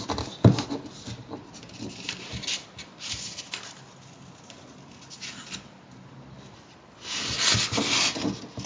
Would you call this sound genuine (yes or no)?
yes